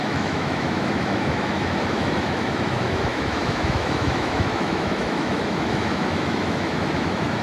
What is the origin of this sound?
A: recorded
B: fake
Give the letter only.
B